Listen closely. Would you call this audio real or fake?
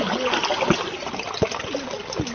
real